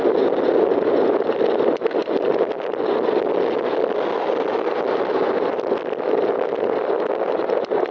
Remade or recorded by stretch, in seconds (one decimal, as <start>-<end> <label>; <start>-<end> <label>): 0.0-7.9 recorded